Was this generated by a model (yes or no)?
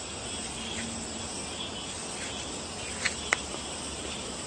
no